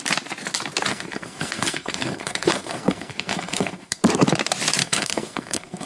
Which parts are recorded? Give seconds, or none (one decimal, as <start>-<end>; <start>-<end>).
0.0-0.9; 4.0-4.8